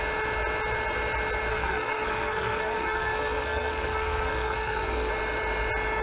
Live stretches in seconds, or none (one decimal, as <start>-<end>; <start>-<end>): 0.0-1.5; 5.1-6.0